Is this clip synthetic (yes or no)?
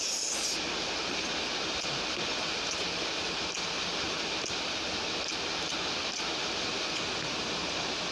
no